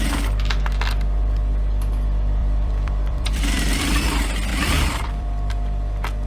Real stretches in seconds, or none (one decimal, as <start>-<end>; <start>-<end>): 0.0-2.4; 3.9-4.5; 5.5-6.3